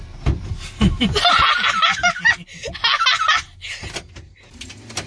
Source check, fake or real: real